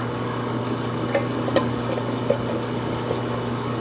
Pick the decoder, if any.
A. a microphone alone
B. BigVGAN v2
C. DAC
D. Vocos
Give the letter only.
C